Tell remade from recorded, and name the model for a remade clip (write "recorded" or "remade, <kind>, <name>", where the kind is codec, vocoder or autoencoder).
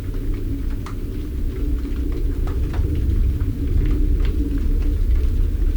recorded